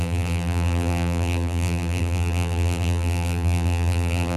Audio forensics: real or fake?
fake